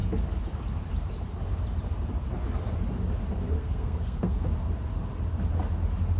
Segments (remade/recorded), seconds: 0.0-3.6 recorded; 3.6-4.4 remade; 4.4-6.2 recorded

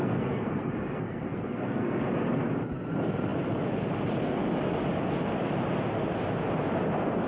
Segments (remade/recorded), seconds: 0.0-2.0 remade; 2.0-7.3 recorded